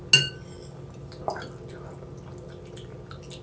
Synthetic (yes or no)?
no